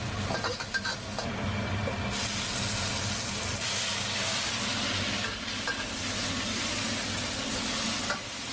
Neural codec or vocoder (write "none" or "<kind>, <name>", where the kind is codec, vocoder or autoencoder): none